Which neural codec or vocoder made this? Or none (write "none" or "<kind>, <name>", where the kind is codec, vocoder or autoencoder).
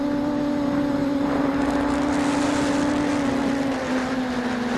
none